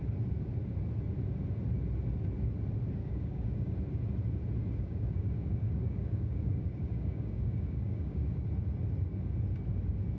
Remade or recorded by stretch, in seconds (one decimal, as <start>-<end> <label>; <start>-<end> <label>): 0.0-3.0 recorded; 3.0-3.7 remade; 3.7-4.6 recorded; 4.6-8.5 remade; 8.5-10.2 recorded